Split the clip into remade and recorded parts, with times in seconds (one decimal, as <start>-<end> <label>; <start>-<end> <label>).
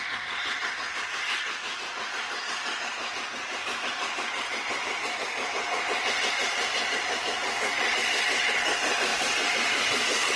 0.0-10.4 recorded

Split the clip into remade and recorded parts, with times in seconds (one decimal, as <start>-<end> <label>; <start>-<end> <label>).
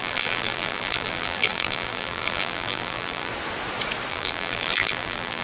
0.0-3.3 remade; 3.3-4.1 recorded; 4.1-5.4 remade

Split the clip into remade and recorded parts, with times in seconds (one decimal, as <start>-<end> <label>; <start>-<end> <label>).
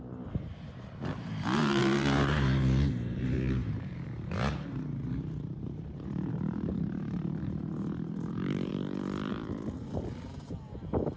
0.0-8.7 remade; 8.7-9.3 recorded; 9.3-11.2 remade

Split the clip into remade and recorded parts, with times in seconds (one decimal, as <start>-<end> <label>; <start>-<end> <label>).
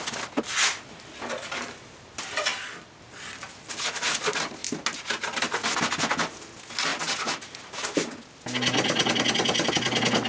0.0-10.3 recorded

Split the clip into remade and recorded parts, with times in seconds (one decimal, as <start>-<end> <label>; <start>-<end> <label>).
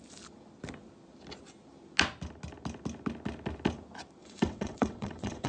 0.0-4.2 recorded; 4.2-5.5 remade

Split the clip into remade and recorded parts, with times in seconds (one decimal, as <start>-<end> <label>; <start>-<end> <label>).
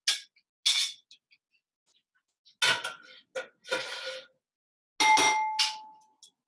0.0-6.5 recorded